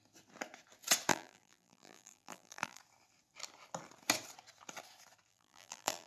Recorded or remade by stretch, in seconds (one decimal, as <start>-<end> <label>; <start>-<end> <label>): 0.0-1.1 recorded; 1.1-2.8 remade; 2.8-5.3 recorded; 5.3-6.1 remade